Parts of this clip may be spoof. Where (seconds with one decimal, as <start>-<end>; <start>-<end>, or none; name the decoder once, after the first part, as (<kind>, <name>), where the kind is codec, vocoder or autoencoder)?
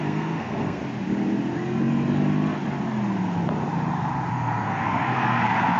0.0-0.8 (codec, SNAC); 4.3-5.8